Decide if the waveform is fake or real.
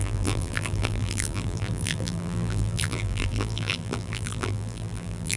fake